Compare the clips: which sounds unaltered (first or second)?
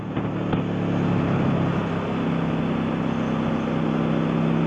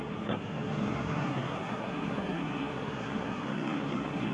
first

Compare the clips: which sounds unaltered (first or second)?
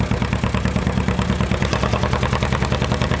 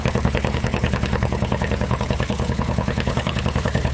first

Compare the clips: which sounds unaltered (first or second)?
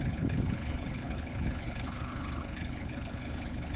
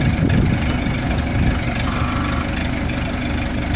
second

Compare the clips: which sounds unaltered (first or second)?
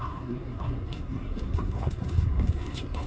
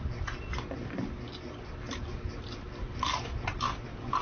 second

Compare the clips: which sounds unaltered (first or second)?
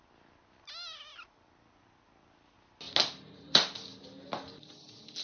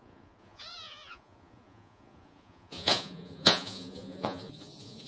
first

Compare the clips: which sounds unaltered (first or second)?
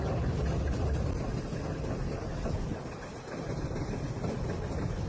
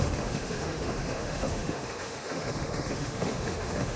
first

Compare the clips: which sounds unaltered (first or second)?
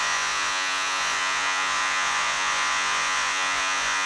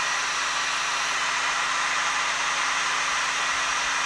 second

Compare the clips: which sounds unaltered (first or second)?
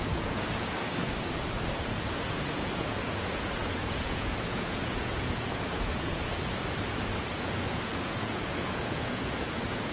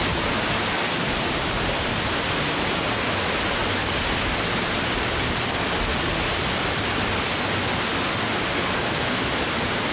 second